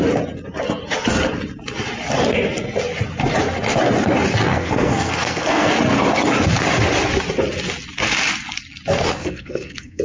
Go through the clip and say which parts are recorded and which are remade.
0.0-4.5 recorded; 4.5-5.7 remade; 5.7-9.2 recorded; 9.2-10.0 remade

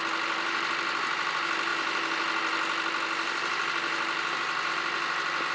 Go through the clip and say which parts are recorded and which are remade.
0.0-5.5 recorded